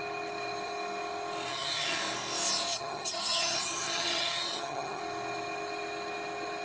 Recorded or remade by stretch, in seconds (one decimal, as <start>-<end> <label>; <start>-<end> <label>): 0.0-1.5 recorded; 1.5-2.0 remade; 2.0-2.7 recorded; 2.7-5.0 remade; 5.0-6.6 recorded